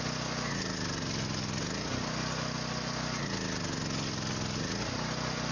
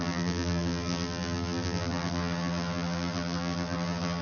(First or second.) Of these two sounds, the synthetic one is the second